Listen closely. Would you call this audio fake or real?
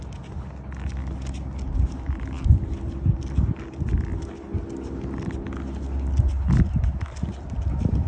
real